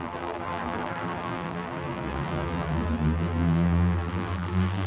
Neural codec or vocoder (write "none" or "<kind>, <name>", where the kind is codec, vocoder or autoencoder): vocoder, BigVGAN v2